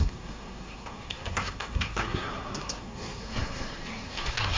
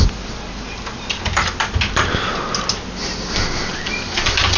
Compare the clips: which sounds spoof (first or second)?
first